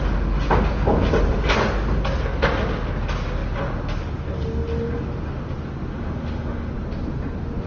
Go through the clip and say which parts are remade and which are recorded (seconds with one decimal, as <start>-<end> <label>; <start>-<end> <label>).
0.0-5.9 recorded; 5.9-6.7 remade; 6.7-7.7 recorded